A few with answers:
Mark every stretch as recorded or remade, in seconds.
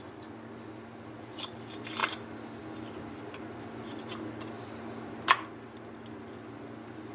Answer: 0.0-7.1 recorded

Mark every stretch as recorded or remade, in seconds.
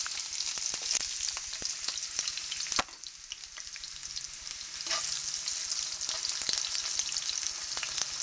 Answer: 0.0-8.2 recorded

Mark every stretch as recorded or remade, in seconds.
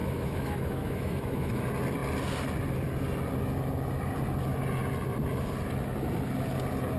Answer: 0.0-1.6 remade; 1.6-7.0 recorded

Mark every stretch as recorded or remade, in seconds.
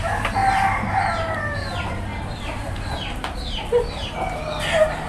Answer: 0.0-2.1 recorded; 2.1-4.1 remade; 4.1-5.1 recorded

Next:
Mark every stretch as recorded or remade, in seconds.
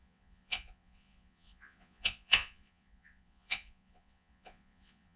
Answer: 0.0-5.2 remade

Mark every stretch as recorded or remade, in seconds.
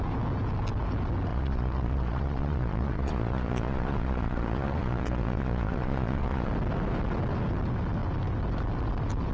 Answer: 0.0-1.3 recorded; 1.3-6.5 remade; 6.5-9.3 recorded